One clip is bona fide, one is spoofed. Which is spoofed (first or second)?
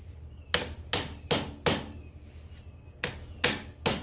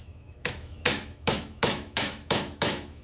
second